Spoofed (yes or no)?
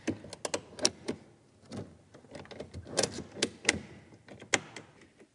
no